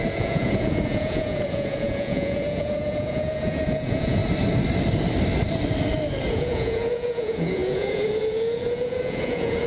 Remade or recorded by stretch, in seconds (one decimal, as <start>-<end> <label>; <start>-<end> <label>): 0.0-4.2 remade; 4.2-6.3 recorded; 6.3-9.7 remade